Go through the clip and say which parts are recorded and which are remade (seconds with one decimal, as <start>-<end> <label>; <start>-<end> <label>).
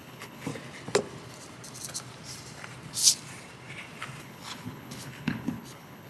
0.0-0.5 remade; 0.5-4.2 recorded; 4.2-6.1 remade